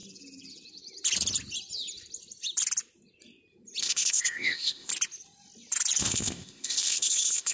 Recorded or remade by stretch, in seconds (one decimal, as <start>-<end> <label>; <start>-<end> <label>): 0.0-3.8 recorded; 3.8-4.9 remade; 4.9-6.0 recorded; 6.0-7.5 remade